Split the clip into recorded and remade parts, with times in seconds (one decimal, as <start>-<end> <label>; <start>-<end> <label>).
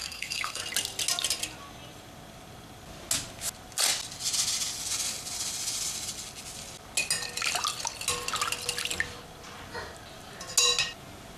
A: 0.0-0.6 remade; 0.6-11.4 recorded